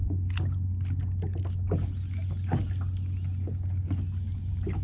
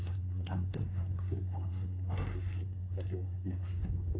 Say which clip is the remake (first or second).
second